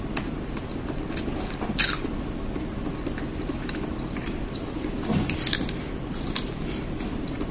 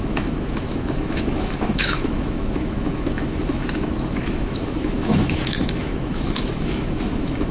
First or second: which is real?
first